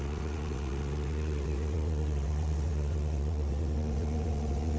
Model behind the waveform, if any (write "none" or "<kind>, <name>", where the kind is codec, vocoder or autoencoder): vocoder, WaveNeXt